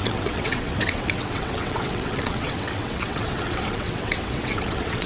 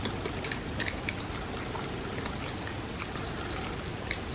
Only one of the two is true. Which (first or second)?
second